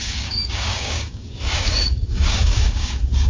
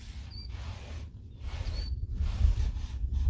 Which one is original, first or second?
second